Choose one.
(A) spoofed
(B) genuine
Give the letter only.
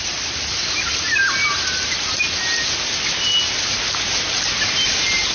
B